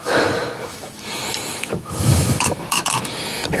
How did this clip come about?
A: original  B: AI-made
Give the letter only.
B